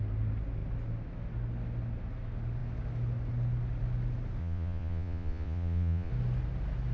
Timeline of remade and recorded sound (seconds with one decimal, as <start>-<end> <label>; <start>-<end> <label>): 0.0-4.4 recorded; 4.4-6.1 remade; 6.1-6.9 recorded